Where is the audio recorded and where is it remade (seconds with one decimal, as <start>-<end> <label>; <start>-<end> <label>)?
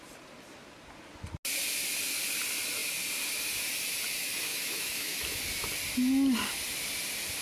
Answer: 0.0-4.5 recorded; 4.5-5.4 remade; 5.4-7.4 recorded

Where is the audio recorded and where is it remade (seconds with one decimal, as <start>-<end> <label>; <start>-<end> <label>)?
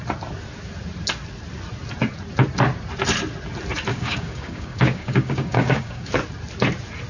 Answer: 0.0-3.9 recorded; 3.9-6.1 remade; 6.1-7.1 recorded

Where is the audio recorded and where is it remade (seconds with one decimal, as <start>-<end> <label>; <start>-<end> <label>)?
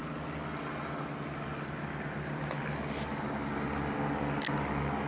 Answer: 0.0-5.1 recorded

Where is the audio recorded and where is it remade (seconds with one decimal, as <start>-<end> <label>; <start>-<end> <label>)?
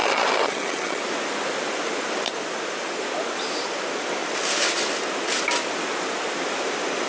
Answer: 0.0-1.0 remade; 1.0-7.1 recorded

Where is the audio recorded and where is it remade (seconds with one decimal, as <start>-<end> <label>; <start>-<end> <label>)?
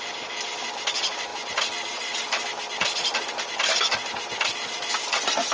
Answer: 0.0-5.5 recorded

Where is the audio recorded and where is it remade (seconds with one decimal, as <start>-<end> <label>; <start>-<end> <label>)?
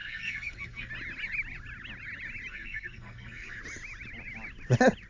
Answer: 0.0-0.9 remade; 0.9-2.5 recorded; 2.5-3.6 remade; 3.6-5.1 recorded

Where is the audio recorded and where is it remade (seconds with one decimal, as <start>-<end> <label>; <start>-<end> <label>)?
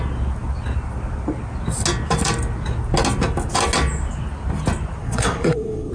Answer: 0.0-5.0 recorded; 5.0-5.9 remade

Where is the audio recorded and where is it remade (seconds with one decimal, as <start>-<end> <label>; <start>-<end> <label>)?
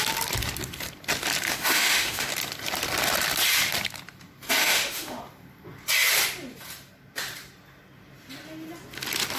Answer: 0.0-1.5 recorded; 1.5-2.3 remade; 2.3-4.6 recorded; 4.6-5.2 remade; 5.2-9.4 recorded